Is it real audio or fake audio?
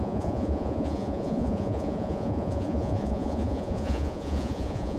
fake